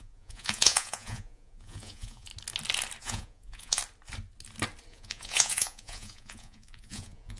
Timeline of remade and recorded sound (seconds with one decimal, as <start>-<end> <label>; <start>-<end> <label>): 0.0-2.3 remade; 2.3-3.0 recorded; 3.0-3.8 remade; 3.8-4.9 recorded; 4.9-7.4 remade